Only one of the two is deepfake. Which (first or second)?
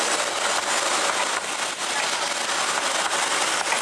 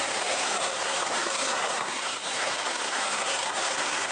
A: second